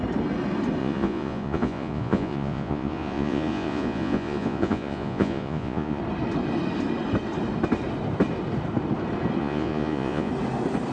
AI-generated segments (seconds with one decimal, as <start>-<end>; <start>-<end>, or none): 0.8-6.0; 9.4-10.3